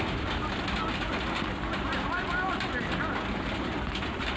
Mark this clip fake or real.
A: real